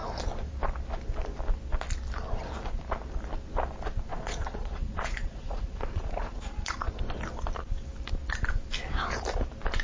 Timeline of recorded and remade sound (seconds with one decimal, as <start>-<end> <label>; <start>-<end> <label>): 0.0-4.1 recorded; 4.1-6.9 remade; 6.9-9.8 recorded